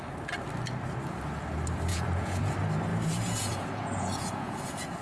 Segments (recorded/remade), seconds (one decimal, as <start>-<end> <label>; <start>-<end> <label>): 0.0-1.9 recorded; 1.9-2.5 remade; 2.5-2.9 recorded; 2.9-5.0 remade